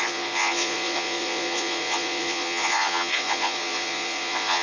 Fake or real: fake